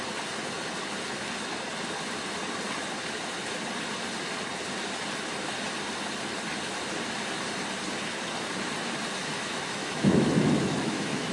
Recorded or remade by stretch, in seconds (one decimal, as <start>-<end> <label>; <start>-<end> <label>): 0.0-9.2 recorded; 9.2-11.3 remade